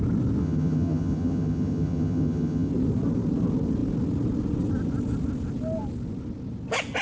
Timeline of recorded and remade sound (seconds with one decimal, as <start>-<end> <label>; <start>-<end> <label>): 0.0-0.4 recorded; 0.4-2.7 remade; 2.7-7.0 recorded